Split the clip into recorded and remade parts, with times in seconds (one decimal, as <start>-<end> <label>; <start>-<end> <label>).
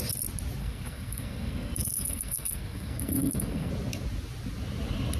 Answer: 0.0-0.6 recorded; 0.6-3.7 remade; 3.7-5.2 recorded